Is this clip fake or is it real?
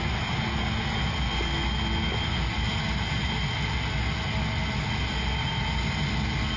real